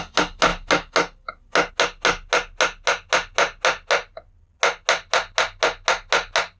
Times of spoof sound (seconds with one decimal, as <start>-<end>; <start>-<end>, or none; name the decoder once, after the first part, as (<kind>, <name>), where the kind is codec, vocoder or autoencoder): none